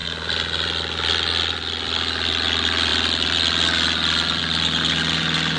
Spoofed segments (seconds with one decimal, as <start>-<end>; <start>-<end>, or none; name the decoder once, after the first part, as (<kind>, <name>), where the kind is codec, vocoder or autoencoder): none